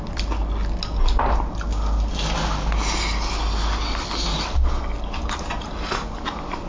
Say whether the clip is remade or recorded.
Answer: recorded